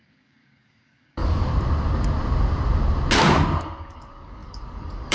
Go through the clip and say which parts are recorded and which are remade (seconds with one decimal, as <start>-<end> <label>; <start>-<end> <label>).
0.0-1.5 remade; 1.5-3.6 recorded; 3.6-5.1 remade